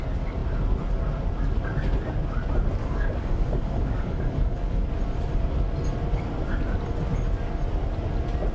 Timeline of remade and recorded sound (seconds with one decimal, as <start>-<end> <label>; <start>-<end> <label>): 0.0-2.8 recorded; 2.8-4.8 remade; 4.8-8.5 recorded